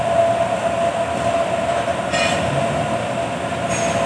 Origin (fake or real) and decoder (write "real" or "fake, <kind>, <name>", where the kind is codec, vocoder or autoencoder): real